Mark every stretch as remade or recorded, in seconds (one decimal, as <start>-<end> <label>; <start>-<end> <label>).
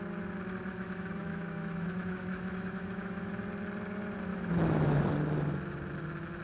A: 0.0-0.7 recorded; 0.7-3.3 remade; 3.3-4.3 recorded; 4.3-5.0 remade; 5.0-6.4 recorded